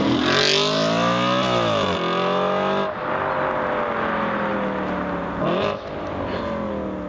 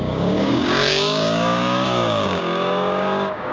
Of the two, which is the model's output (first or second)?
second